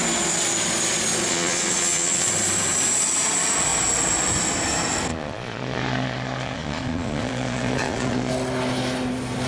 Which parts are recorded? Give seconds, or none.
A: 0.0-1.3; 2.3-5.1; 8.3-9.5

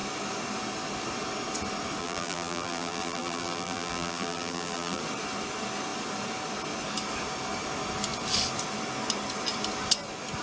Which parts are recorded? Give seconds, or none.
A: 0.0-2.0; 5.0-10.4

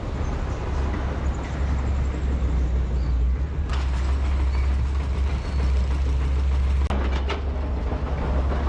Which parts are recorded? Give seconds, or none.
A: 0.0-8.7

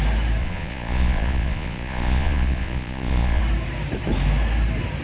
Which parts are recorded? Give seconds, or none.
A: 0.0-0.4; 3.4-5.0

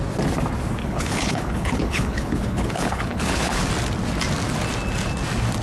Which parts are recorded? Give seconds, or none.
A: 0.0-0.8; 3.6-5.6